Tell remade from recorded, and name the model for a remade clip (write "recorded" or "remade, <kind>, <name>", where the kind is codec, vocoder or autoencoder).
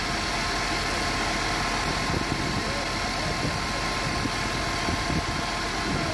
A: recorded